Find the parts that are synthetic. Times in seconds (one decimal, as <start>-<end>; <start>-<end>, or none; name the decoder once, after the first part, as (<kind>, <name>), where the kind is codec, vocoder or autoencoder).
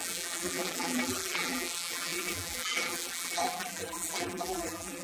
0.0-5.0 (vocoder, BigVGAN v2)